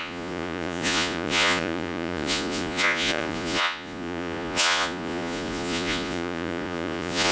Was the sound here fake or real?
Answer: fake